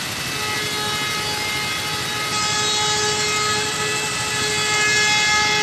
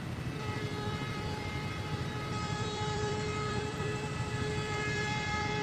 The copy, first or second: second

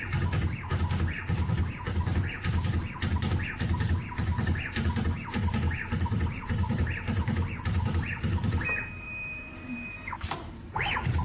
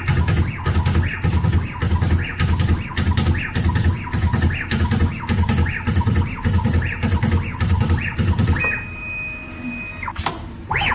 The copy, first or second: first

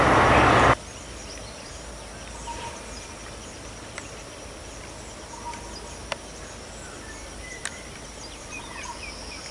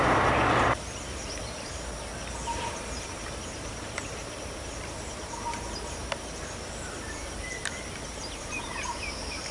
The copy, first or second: second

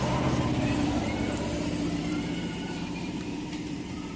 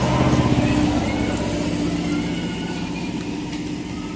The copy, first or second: first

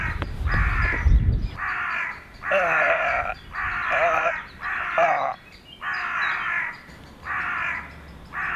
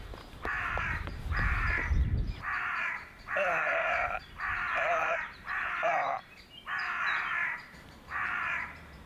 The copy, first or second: second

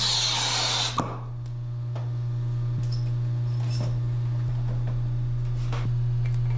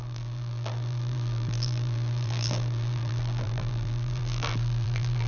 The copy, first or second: second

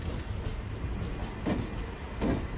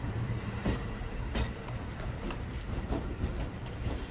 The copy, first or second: second